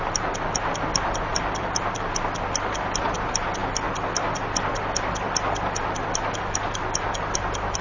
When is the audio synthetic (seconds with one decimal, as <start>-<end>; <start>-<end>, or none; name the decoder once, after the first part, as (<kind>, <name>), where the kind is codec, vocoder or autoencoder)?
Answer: none